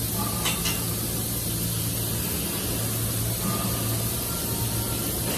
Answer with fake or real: real